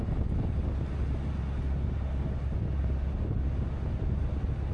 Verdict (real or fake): real